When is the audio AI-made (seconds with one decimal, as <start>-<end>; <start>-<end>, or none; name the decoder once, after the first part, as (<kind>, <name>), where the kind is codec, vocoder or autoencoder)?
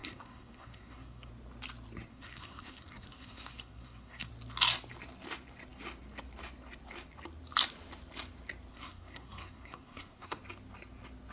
0.0-1.3 (codec, SNAC); 2.1-4.3; 8.7-10.4